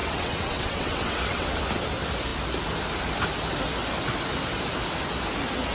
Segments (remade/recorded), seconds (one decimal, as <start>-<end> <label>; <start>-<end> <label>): 0.0-1.6 remade; 1.6-5.7 recorded